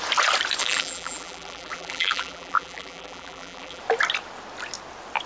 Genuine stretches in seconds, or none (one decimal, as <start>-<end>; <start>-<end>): 0.0-0.6; 3.8-5.3